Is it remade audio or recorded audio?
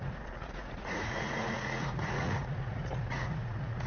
remade